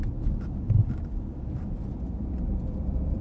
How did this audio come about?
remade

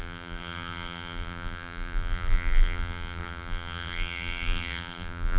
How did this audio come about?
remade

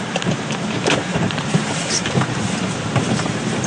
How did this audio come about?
remade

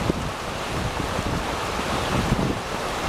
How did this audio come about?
remade